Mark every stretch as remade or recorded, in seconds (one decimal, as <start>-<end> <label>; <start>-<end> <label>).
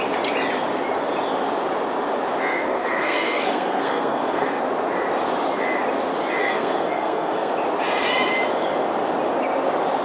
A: 0.0-2.5 recorded; 2.5-4.6 remade; 4.6-6.4 recorded; 6.4-7.5 remade; 7.5-10.0 recorded